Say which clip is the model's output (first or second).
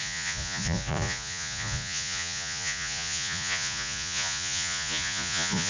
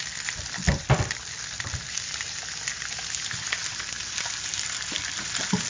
first